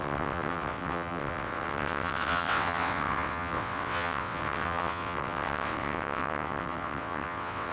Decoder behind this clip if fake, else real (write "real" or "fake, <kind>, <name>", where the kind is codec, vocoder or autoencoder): fake, vocoder, WaveNeXt